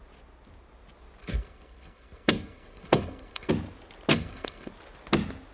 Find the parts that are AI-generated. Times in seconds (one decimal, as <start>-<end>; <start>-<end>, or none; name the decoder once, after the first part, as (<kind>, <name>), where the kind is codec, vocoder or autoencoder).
1.2-3.5 (codec, SNAC); 4.1-4.7